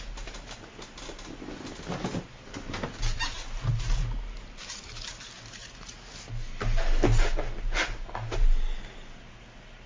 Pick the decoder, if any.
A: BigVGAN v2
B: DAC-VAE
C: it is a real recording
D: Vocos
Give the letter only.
C